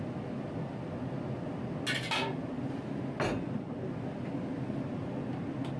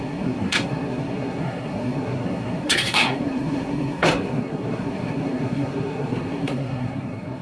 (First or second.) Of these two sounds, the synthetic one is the second